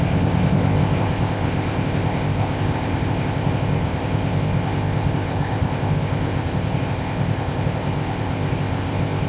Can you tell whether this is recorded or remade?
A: remade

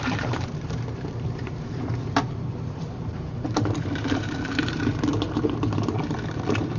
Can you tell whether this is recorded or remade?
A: remade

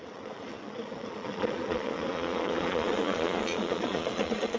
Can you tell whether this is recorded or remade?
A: remade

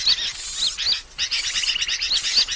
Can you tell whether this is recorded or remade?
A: recorded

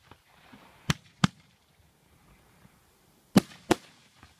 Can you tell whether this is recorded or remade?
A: remade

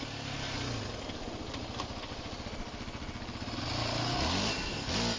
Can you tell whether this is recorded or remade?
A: recorded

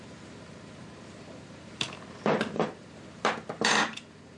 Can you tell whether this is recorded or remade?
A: remade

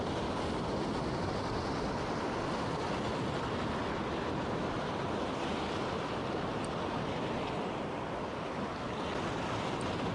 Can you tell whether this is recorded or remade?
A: recorded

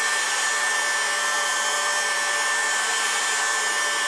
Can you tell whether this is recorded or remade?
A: recorded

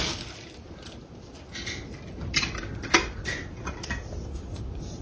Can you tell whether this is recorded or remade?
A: recorded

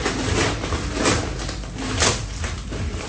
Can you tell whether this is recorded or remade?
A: recorded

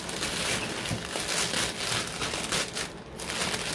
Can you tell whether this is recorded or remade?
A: recorded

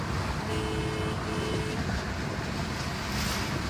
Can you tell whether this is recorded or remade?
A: recorded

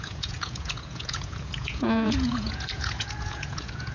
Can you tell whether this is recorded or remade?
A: remade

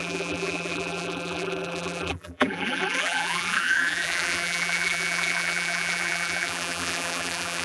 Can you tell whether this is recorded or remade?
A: remade